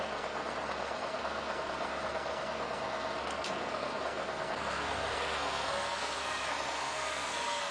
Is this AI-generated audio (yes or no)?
yes